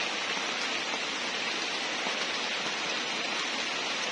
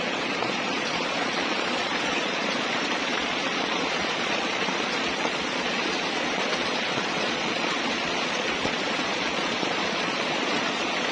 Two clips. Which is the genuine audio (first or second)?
first